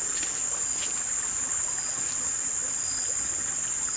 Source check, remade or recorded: recorded